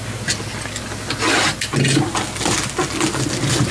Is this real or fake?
real